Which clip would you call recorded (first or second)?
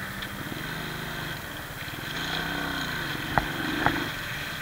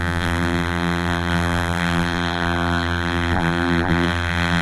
first